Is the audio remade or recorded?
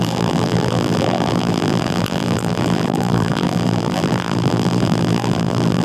remade